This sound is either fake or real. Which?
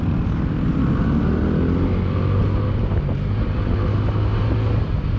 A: real